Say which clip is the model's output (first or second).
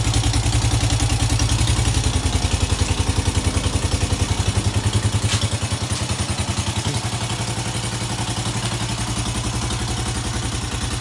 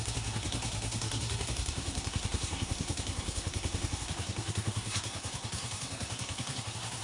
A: second